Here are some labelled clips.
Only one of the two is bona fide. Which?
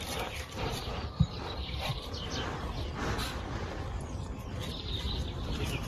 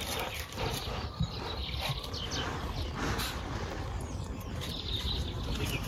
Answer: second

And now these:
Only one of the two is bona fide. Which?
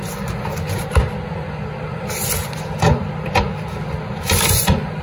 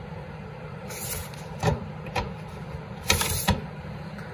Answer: first